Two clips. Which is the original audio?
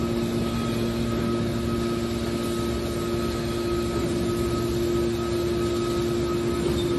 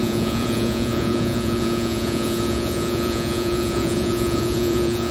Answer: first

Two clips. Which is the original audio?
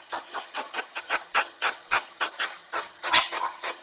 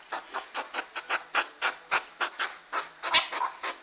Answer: second